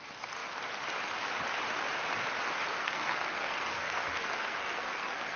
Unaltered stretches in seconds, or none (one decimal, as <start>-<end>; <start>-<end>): 0.0-2.7